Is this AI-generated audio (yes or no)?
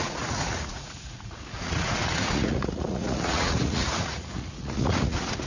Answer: yes